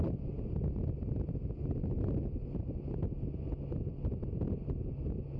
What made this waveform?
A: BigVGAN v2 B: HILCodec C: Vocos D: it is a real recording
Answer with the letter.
D